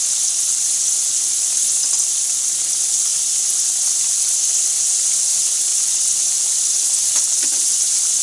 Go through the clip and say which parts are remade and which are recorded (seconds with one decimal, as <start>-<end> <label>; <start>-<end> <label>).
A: 0.0-8.2 recorded